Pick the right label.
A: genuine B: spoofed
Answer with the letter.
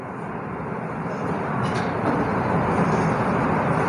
A